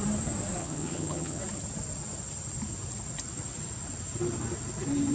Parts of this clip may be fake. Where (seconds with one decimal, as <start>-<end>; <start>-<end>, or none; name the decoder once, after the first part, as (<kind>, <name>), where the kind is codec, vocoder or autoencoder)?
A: 0.6-1.4 (vocoder, HiFi-GAN)